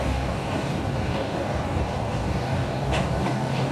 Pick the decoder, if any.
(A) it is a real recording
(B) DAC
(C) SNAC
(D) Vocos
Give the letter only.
B